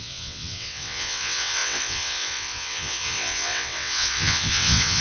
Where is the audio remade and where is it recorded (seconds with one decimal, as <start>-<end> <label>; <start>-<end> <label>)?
0.0-5.0 remade